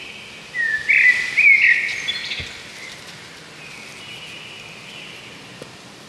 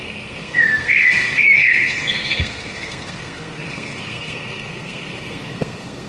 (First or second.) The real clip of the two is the first